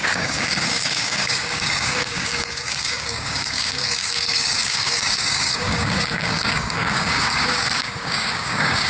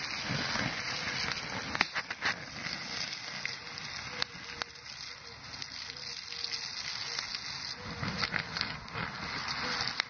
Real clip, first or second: second